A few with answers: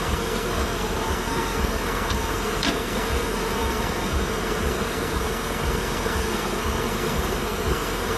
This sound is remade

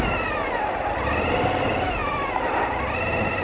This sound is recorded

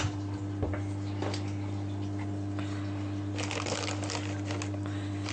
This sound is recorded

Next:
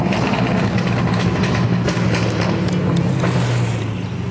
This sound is recorded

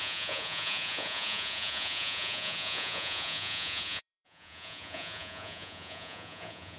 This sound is remade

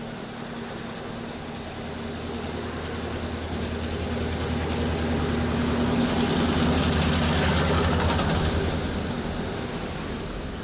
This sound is recorded